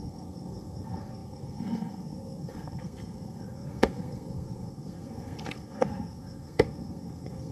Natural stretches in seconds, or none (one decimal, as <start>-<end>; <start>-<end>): none